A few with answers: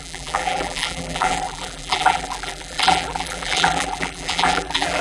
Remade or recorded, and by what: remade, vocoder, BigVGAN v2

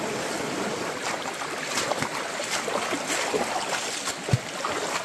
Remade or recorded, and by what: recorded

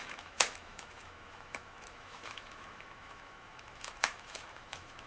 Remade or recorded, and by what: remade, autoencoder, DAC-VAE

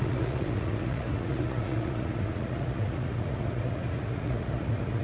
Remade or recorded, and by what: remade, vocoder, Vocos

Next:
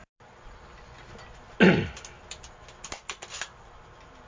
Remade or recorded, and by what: recorded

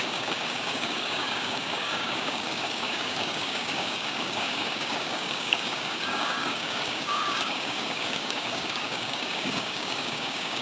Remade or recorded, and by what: remade, codec, DAC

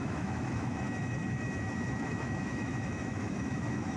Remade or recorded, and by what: remade, autoencoder, DAC-VAE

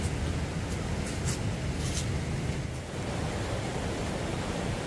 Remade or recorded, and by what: recorded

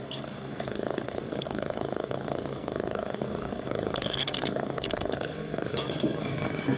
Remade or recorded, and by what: remade, codec, SNAC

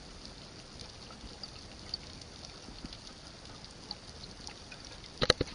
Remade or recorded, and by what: recorded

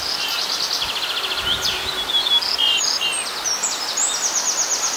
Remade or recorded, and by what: recorded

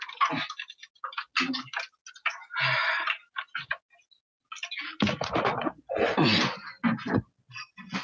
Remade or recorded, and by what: recorded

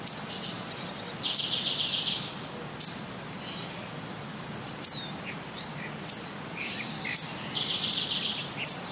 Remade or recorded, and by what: remade, vocoder, BigVGAN v2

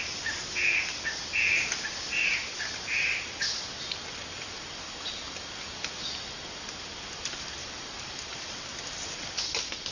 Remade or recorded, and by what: recorded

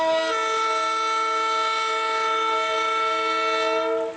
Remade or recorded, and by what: recorded